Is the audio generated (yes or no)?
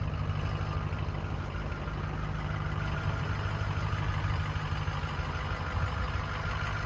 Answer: no